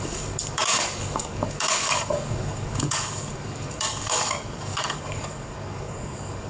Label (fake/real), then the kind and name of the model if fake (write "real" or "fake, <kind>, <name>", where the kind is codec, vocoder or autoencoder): fake, codec, DAC